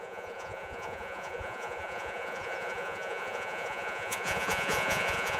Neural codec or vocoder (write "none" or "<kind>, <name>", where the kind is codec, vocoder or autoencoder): vocoder, Vocos